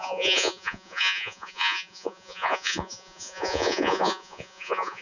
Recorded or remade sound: remade